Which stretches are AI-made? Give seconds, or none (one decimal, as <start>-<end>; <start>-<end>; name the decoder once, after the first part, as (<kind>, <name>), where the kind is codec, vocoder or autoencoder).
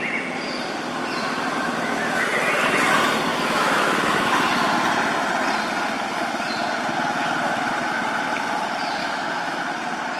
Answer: 3.3-4.3 (autoencoder, DAC-VAE); 9.0-9.6